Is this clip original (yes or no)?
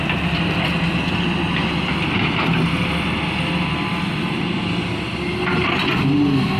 yes